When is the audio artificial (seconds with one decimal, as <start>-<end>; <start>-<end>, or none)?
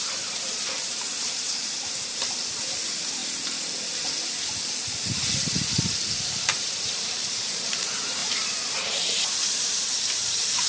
0.0-3.2; 6.1-10.7